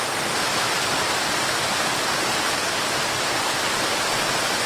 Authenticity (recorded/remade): recorded